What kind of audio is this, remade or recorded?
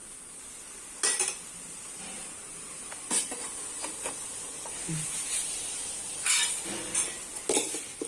recorded